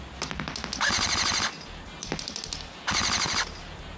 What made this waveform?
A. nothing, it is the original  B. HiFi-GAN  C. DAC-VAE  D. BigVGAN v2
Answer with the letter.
A